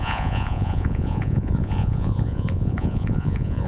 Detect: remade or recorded remade